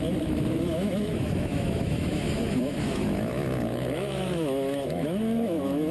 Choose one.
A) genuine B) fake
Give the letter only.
B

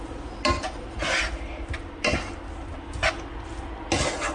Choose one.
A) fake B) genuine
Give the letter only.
B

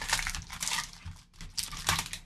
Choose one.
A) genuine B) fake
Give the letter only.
A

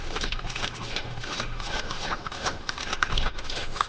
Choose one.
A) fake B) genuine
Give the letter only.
A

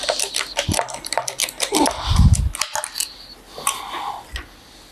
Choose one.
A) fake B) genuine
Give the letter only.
B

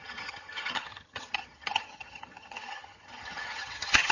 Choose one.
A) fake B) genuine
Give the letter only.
A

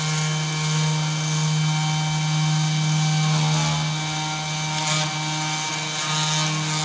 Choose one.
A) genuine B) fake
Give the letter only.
A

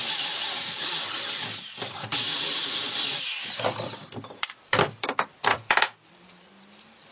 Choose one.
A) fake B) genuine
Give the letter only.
A